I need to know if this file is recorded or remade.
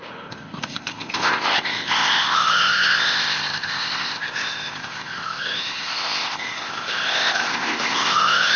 remade